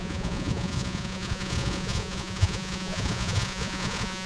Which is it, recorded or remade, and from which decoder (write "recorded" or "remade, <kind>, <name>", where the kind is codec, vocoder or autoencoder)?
remade, vocoder, Vocos